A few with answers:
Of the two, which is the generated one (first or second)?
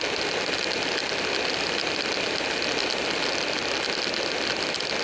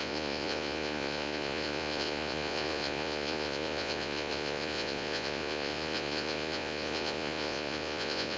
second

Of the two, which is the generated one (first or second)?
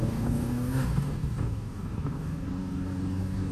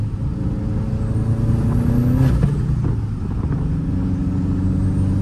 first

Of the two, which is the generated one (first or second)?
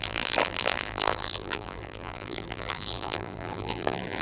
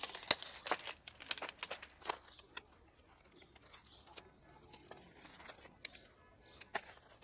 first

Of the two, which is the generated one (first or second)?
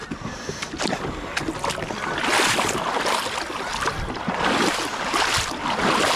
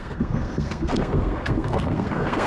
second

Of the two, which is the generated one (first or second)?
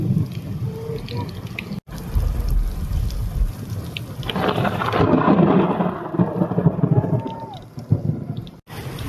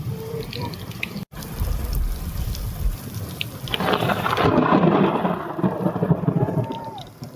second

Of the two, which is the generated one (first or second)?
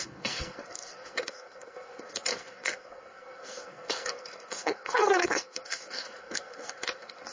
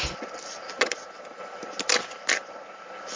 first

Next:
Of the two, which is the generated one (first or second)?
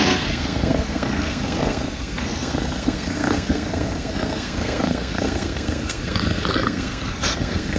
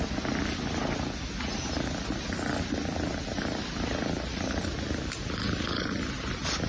first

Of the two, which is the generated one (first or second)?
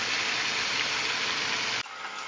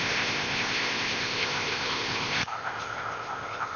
second